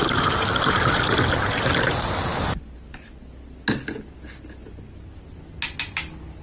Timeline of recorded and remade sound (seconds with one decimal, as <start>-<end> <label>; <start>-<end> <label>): 0.0-6.4 recorded